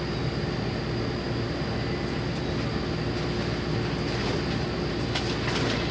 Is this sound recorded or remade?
recorded